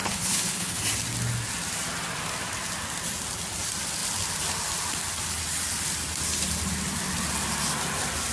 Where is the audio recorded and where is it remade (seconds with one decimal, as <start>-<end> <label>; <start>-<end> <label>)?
0.0-0.8 remade; 0.8-8.3 recorded